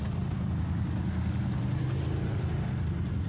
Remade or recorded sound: recorded